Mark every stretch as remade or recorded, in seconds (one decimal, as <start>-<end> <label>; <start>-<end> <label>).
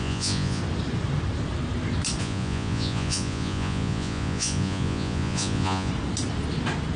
0.0-0.6 remade; 0.6-2.2 recorded; 2.2-5.9 remade; 5.9-7.0 recorded